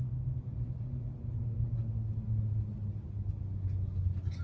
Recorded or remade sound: recorded